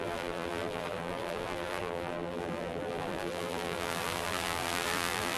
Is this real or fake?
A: fake